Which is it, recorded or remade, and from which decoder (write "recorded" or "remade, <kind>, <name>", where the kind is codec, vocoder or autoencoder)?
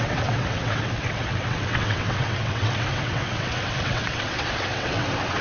remade, vocoder, WaveNeXt